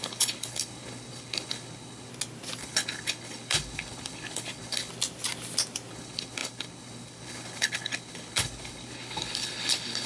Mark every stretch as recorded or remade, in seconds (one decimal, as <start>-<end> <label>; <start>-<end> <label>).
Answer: 0.0-2.1 remade; 2.1-2.6 recorded; 2.6-4.9 remade; 4.9-5.9 recorded; 5.9-10.1 remade

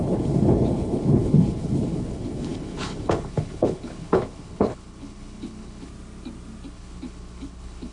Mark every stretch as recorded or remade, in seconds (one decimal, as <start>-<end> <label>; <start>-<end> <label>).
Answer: 0.0-5.9 remade; 5.9-6.7 recorded; 6.7-7.9 remade

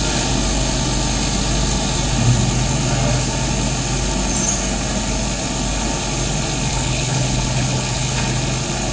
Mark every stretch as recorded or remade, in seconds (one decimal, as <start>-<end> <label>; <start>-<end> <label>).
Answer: 0.0-6.7 recorded; 6.7-8.2 remade; 8.2-8.9 recorded

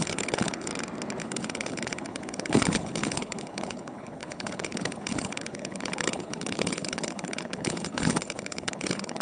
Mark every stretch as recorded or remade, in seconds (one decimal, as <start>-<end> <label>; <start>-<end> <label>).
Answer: 0.0-0.7 remade; 0.7-1.2 recorded; 1.2-9.2 remade

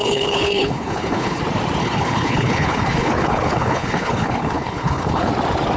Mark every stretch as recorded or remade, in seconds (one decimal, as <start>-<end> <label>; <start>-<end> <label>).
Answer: 0.0-1.4 remade; 1.4-1.8 recorded; 1.8-5.3 remade; 5.3-5.8 recorded

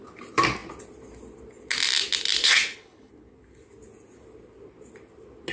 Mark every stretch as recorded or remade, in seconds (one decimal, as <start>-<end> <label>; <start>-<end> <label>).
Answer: 0.0-2.4 recorded; 2.4-3.1 remade; 3.1-5.5 recorded